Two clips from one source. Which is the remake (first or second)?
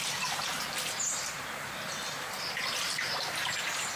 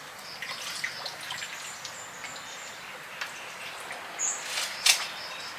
first